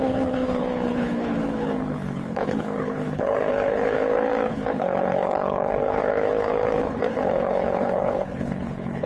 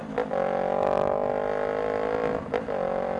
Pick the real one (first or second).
second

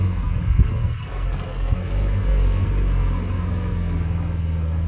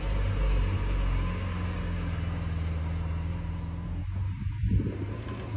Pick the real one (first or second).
second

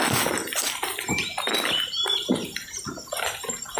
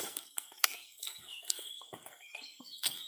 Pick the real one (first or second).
first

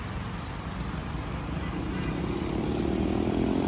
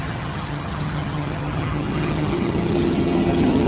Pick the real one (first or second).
first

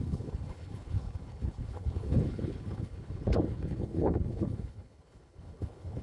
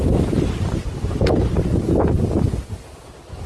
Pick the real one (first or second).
second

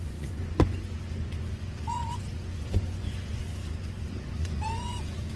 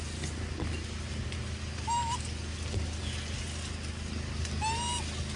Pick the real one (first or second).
second